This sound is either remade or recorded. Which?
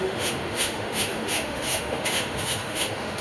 remade